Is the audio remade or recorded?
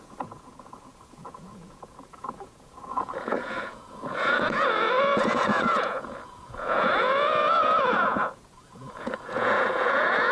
remade